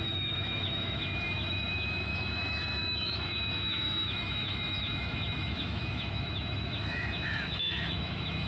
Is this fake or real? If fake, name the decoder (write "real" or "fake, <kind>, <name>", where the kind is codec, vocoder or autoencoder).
fake, autoencoder, DAC-VAE